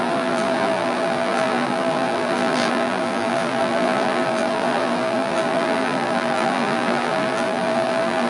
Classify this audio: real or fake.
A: fake